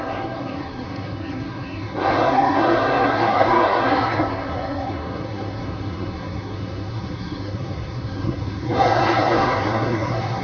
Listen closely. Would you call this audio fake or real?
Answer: fake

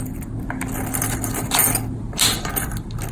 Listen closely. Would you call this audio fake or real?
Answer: real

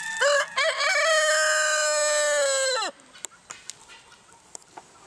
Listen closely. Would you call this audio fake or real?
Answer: real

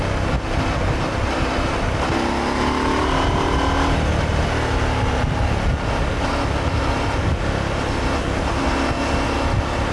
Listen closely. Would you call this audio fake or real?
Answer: real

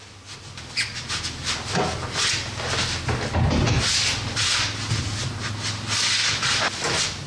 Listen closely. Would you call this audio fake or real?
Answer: real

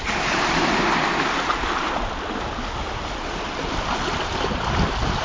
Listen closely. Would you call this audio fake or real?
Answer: real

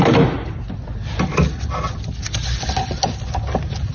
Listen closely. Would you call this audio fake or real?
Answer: real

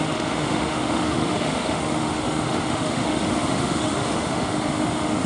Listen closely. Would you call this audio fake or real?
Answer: fake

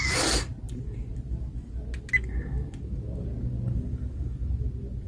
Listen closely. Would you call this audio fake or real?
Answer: real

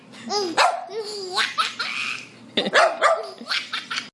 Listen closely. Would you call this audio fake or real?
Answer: real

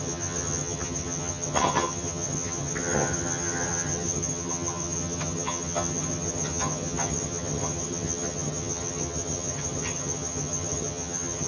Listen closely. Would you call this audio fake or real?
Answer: fake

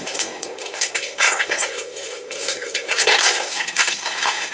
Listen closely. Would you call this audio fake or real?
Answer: fake